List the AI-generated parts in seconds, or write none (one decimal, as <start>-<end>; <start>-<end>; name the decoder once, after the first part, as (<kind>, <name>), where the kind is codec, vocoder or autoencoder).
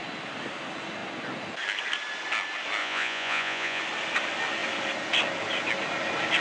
2.8-3.8 (vocoder, Vocos)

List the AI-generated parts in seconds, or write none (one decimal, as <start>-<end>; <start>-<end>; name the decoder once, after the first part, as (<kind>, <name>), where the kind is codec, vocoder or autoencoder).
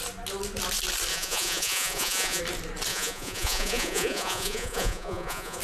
1.1-2.4 (vocoder, Vocos); 2.9-5.6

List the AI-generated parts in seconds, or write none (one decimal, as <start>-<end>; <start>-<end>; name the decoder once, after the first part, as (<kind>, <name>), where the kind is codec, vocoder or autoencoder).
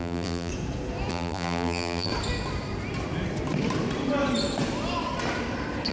0.0-0.5 (vocoder, BigVGAN v2); 1.1-2.1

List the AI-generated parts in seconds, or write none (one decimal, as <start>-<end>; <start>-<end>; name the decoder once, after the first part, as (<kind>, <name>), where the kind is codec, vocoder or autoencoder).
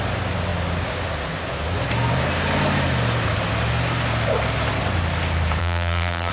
5.6-6.3 (vocoder, BigVGAN v2)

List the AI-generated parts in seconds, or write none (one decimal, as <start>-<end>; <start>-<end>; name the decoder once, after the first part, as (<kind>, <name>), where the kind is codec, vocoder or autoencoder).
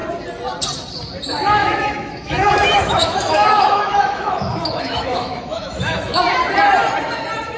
1.6-6.2 (autoencoder, DAC-VAE)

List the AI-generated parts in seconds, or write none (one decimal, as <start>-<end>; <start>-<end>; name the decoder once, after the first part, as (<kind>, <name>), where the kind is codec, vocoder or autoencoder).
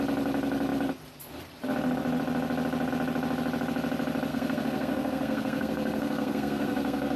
4.3-7.2 (codec, SNAC)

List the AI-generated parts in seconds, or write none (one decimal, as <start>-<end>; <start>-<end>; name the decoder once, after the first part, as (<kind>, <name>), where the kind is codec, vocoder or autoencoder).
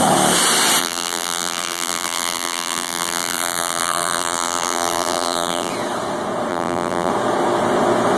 0.8-5.7 (vocoder, BigVGAN v2); 6.5-7.1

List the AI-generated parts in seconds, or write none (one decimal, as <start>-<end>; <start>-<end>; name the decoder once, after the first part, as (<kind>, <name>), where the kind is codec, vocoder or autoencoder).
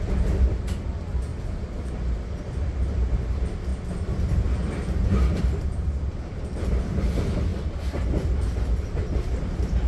0.0-1.3 (vocoder, BigVGAN v2); 2.4-9.9